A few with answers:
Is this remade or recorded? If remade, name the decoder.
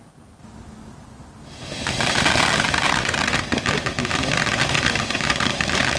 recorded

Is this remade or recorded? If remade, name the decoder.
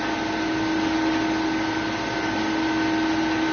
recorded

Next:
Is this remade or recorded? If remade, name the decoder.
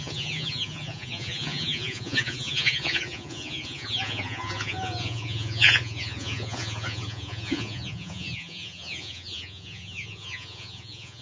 remade, vocoder, Vocos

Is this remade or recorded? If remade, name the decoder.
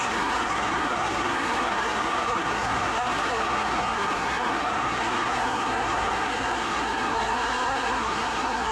remade, codec, SNAC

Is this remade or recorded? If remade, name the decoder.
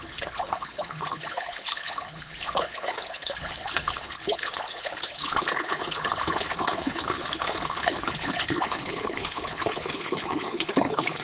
remade, codec, HILCodec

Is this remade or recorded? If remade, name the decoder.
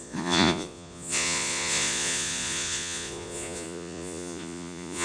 remade, vocoder, Vocos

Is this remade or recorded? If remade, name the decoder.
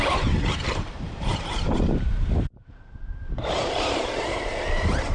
remade, vocoder, BigVGAN v2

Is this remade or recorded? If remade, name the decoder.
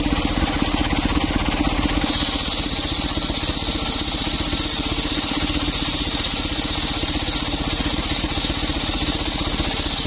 recorded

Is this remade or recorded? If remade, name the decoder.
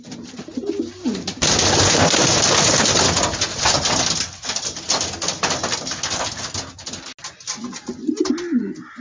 recorded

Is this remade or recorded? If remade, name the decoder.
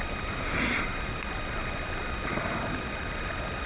recorded